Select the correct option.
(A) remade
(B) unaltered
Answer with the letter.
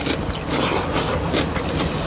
B